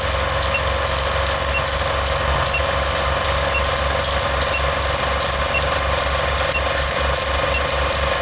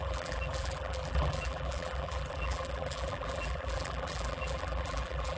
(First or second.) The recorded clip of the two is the first